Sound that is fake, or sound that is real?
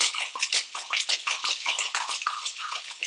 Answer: fake